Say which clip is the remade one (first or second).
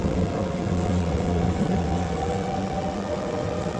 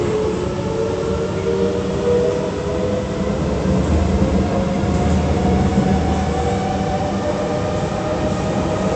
first